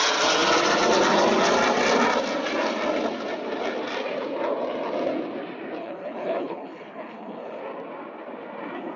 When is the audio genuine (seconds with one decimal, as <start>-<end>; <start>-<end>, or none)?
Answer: 0.0-5.8; 7.6-9.0